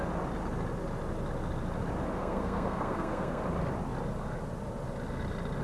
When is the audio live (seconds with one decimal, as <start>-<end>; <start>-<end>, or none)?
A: 0.0-2.2; 3.4-5.6